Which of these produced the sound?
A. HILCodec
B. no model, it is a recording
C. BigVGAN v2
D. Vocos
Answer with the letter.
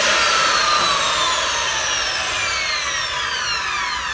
B